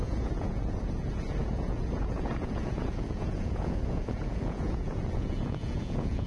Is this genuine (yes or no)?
no